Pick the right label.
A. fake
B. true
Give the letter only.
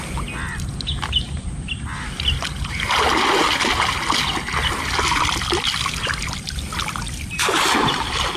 B